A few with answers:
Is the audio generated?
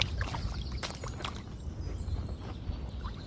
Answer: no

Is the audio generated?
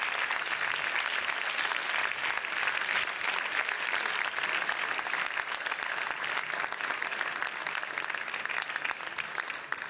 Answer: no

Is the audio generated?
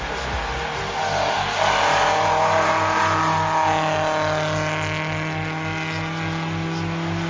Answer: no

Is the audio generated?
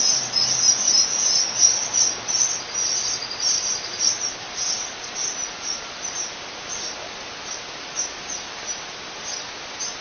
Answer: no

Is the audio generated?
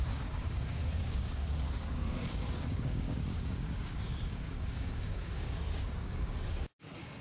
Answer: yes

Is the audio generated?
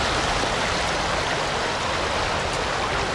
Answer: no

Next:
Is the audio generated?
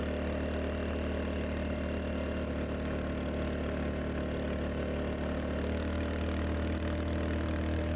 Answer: no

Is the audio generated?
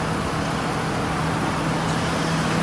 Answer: no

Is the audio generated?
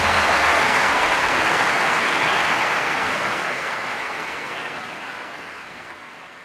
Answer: yes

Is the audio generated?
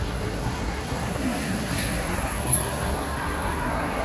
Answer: yes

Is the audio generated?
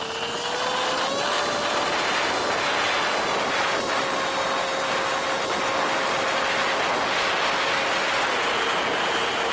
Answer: no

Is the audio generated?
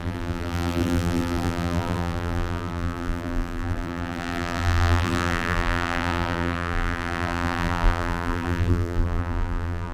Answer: yes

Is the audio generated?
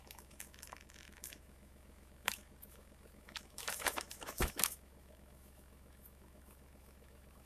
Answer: yes